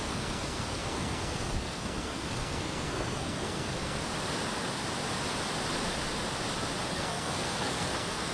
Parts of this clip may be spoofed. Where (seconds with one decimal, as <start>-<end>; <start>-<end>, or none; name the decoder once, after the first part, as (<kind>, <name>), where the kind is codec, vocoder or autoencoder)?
0.0-4.0 (codec, SNAC); 6.9-8.3